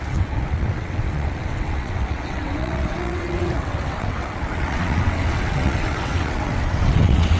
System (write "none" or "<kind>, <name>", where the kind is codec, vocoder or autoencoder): vocoder, WaveNeXt